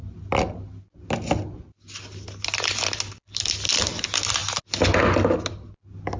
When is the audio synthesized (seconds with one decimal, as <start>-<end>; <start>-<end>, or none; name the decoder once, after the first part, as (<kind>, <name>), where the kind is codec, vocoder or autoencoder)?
none